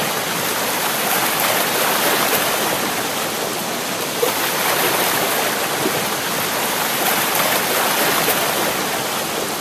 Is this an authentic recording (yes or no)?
yes